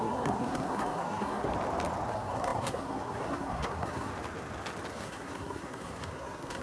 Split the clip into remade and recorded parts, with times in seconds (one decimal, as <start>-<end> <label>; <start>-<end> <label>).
0.0-1.5 remade; 1.5-2.1 recorded; 2.1-4.1 remade; 4.1-4.9 recorded; 4.9-6.6 remade